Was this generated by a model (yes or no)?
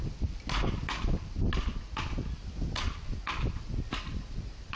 no